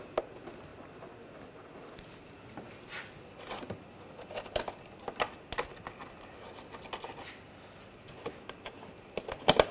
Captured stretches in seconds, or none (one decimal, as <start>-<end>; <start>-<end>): 0.0-9.7